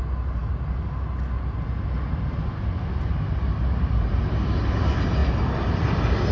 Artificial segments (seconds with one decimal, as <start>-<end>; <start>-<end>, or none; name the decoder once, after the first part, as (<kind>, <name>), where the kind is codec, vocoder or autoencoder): none